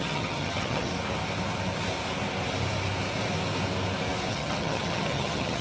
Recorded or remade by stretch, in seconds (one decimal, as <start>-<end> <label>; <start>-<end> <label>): 0.0-0.9 remade; 0.9-4.3 recorded; 4.3-5.6 remade